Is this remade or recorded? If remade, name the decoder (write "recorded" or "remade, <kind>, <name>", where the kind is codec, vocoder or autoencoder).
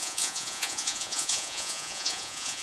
remade, vocoder, Vocos